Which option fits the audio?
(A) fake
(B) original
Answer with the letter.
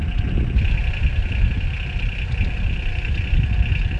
B